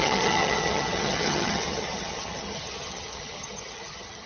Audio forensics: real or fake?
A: fake